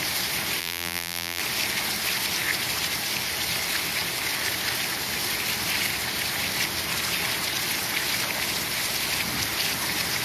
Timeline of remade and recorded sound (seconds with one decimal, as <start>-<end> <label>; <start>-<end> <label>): 0.0-0.6 recorded; 0.6-1.4 remade; 1.4-10.2 recorded